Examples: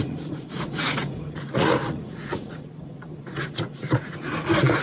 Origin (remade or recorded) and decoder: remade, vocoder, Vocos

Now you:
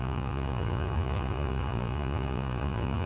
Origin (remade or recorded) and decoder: remade, vocoder, Vocos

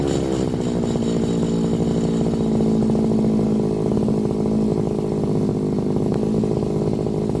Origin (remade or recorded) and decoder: recorded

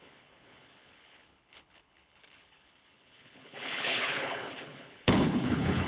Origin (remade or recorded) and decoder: remade, codec, HILCodec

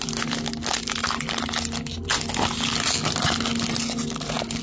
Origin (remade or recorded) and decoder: recorded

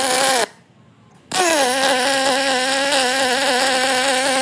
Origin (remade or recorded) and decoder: recorded